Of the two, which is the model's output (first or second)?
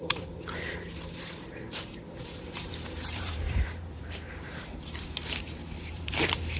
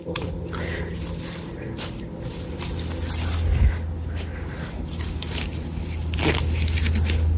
first